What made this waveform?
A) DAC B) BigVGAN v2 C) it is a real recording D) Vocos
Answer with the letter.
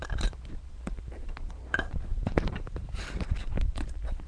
B